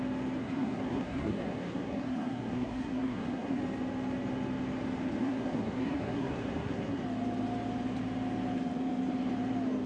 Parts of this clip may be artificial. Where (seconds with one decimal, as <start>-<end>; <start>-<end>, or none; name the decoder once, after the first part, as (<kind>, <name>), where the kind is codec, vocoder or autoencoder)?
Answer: 0.4-3.6 (codec, SNAC); 5.2-7.0